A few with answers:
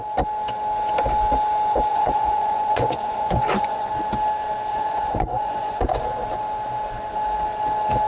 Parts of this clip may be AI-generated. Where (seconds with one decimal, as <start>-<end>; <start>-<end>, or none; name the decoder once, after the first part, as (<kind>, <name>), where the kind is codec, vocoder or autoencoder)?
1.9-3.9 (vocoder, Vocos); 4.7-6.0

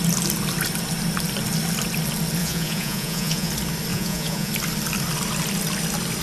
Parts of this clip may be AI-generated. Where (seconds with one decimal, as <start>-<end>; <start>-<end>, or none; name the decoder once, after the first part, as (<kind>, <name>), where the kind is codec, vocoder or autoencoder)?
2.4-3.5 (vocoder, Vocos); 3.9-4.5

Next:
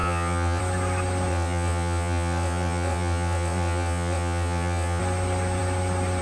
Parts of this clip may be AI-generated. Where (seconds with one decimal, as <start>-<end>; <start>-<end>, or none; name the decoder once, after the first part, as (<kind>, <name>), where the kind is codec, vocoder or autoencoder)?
0.0-0.6 (vocoder, WaveNeXt); 1.3-5.0

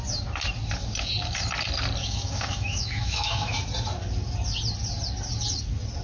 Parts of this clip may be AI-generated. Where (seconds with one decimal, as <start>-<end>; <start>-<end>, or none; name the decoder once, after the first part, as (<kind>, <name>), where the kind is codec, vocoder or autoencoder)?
2.0-3.6 (autoencoder, DAC-VAE)

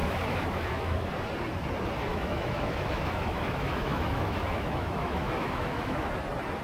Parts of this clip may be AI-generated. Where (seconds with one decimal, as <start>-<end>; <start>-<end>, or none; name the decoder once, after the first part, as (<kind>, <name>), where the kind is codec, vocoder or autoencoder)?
0.0-1.1 (autoencoder, DAC-VAE); 2.1-6.1

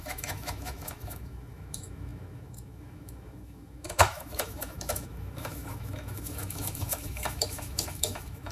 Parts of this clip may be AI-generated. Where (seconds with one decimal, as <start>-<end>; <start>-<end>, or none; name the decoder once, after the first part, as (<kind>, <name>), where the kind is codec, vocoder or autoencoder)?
0.0-8.5 (autoencoder, DAC-VAE)